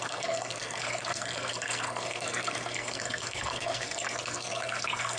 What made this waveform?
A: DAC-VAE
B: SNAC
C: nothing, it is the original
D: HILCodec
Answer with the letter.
B